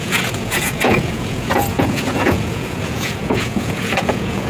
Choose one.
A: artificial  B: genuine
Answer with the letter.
A